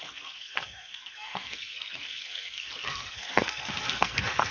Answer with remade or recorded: remade